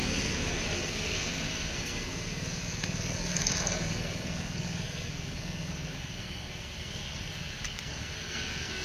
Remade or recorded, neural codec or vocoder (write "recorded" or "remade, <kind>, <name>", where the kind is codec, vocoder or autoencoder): remade, codec, SNAC